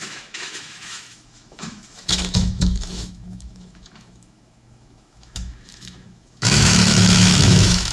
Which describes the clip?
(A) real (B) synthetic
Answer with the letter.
B